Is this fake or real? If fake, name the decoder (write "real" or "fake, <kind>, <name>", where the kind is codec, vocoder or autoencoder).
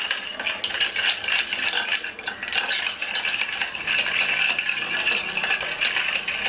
real